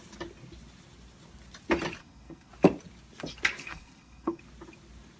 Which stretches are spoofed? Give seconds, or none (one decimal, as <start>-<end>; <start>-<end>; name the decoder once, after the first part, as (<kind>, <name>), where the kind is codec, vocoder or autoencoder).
2.0-2.5 (codec, SNAC); 3.6-4.4